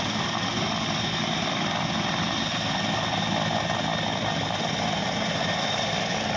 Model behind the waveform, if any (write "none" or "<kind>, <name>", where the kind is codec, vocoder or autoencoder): none